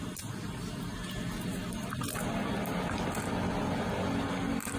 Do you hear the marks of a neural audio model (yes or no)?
no